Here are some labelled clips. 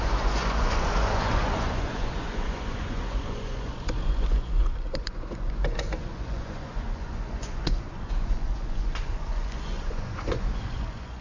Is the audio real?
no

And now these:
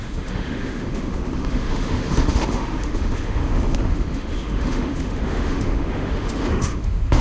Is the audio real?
no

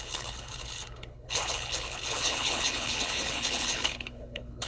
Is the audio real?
no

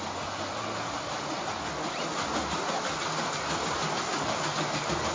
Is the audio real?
yes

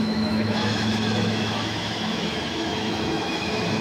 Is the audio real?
no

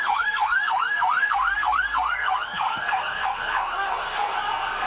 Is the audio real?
no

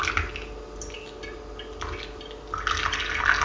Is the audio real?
yes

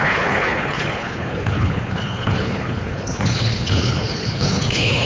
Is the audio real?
no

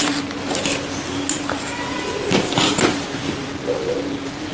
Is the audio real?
yes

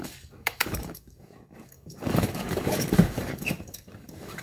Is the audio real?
no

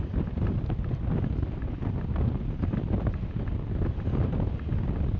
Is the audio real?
yes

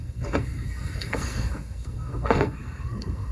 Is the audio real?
no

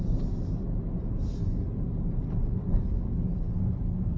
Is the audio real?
yes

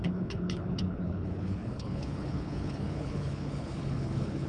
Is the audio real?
no